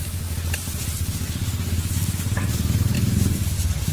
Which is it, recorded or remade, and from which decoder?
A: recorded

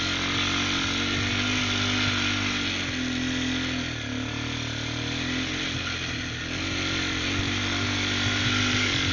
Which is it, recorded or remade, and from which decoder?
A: recorded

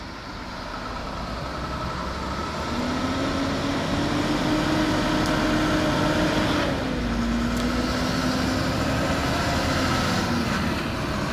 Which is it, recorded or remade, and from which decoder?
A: recorded